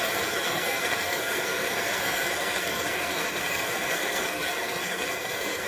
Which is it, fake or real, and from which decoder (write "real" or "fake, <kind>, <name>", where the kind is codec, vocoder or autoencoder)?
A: fake, codec, SNAC